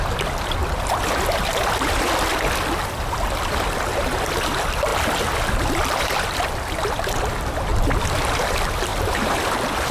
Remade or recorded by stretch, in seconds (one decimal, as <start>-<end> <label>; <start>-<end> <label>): 0.0-0.6 remade; 0.6-2.9 recorded; 2.9-4.9 remade; 4.9-5.7 recorded; 5.7-7.7 remade; 7.7-8.3 recorded; 8.3-9.9 remade